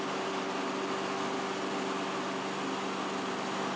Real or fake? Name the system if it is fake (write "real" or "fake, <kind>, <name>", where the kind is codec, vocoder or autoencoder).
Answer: real